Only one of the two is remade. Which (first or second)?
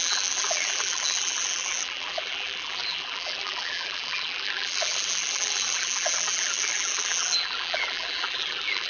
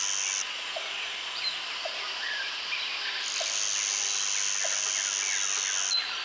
first